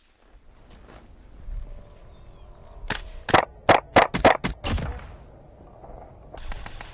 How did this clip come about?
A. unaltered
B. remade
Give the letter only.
A